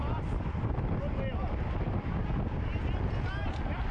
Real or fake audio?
real